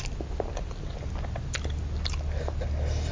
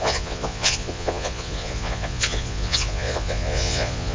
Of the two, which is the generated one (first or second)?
second